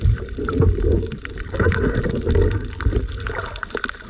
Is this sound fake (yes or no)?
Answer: no